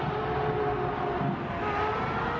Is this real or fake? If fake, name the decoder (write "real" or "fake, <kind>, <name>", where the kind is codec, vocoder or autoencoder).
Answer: real